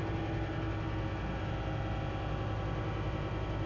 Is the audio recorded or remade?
recorded